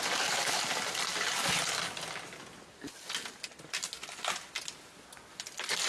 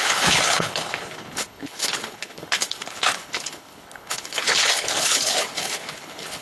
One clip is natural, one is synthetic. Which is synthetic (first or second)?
second